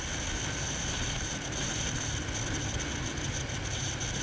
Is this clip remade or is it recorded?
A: recorded